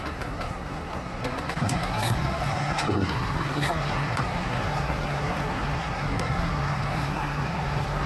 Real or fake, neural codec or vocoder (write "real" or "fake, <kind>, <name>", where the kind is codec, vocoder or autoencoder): fake, codec, SNAC